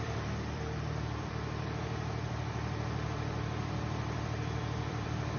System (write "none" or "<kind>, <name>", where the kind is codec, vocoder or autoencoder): vocoder, BigVGAN v2